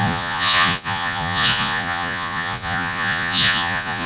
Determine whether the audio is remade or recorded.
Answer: remade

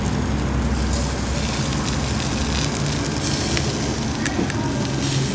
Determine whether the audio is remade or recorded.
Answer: recorded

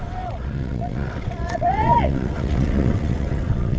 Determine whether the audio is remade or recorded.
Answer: remade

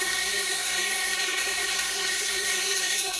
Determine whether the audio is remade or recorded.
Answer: remade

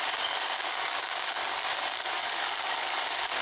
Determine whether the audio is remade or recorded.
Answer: remade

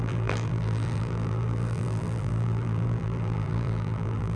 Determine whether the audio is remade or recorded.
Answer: remade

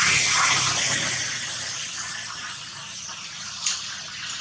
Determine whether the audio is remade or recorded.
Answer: recorded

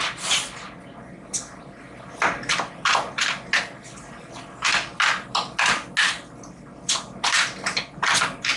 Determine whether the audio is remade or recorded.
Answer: recorded